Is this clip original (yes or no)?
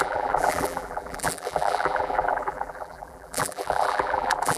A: no